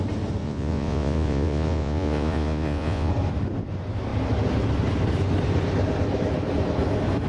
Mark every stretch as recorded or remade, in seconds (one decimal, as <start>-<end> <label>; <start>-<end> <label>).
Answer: 0.0-0.4 recorded; 0.4-3.1 remade; 3.1-7.3 recorded